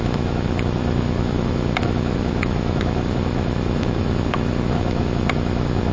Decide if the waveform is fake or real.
fake